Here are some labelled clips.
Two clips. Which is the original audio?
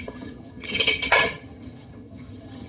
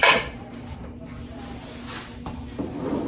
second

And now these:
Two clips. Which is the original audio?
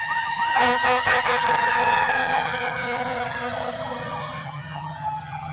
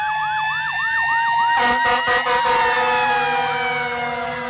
second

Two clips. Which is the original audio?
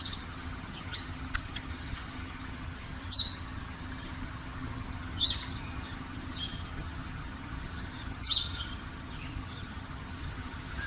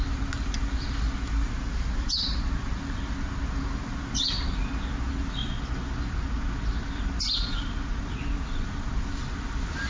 second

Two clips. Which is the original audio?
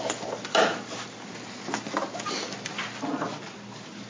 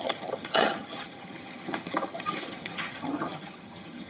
first